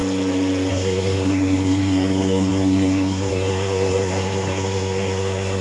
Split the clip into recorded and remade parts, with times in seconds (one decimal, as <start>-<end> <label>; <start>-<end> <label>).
0.0-0.7 recorded; 0.7-5.6 remade